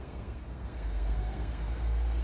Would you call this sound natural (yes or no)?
no